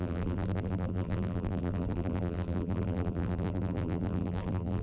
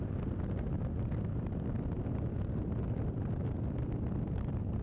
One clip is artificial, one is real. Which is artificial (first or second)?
first